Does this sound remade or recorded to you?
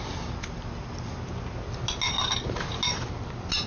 recorded